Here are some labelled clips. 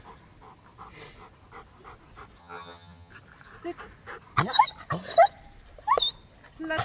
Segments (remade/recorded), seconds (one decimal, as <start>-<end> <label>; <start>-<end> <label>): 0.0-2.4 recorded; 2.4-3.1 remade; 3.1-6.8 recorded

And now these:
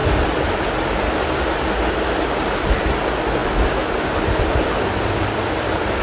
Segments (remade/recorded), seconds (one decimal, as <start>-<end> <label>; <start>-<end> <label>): 0.0-6.0 recorded

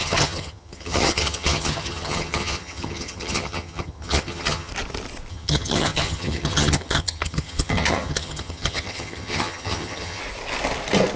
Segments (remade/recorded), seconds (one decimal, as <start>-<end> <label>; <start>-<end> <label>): 0.0-4.7 remade; 4.7-5.3 recorded; 5.3-10.2 remade; 10.2-11.2 recorded

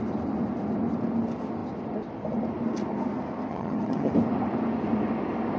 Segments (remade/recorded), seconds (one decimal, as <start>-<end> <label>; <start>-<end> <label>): 0.0-3.5 recorded; 3.5-4.1 remade; 4.1-5.6 recorded

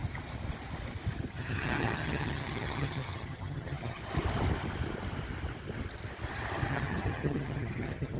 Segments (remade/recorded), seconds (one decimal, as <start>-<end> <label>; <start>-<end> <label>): 0.0-1.3 recorded; 1.3-4.0 remade; 4.0-6.7 recorded; 6.7-8.2 remade

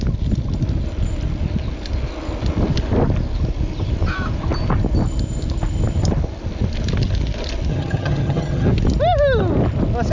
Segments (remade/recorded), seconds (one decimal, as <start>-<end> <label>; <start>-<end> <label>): 0.0-7.7 recorded; 7.7-8.7 remade; 8.7-10.1 recorded

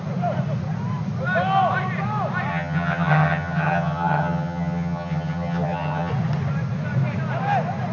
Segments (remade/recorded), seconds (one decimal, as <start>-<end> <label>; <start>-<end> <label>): 0.0-2.5 recorded; 2.5-6.1 remade; 6.1-7.9 recorded